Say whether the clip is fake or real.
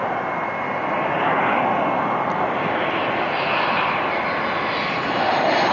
real